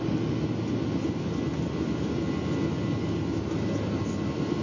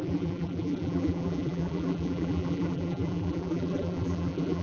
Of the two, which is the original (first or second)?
first